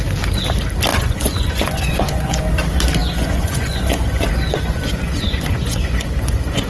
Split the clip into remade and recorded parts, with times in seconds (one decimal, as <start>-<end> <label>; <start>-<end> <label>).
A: 0.0-0.9 recorded; 0.9-2.4 remade; 2.4-3.0 recorded; 3.0-6.7 remade